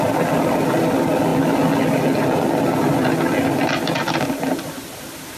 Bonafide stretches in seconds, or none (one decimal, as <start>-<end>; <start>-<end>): 0.0-5.4